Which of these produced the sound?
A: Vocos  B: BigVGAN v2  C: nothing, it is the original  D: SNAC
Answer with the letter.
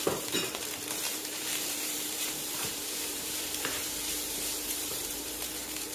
B